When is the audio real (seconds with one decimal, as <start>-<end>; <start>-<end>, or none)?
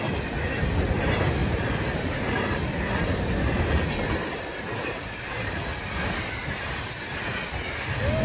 0.0-8.2